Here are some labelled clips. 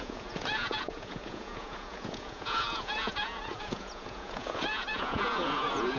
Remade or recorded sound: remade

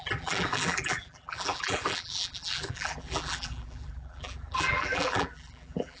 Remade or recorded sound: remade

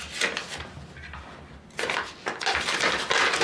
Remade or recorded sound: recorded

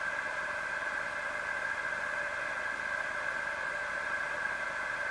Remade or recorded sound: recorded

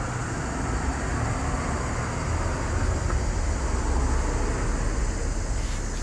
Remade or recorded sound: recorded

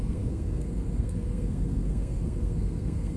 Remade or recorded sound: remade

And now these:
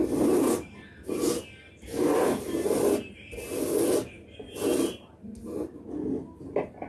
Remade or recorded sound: recorded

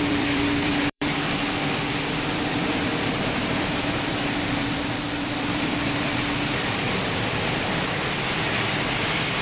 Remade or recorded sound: remade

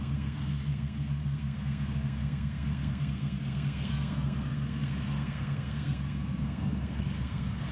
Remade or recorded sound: remade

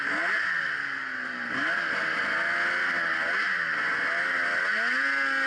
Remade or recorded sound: recorded